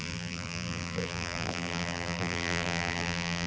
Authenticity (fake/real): fake